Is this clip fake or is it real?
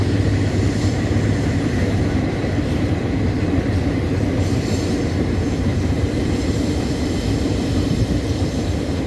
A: fake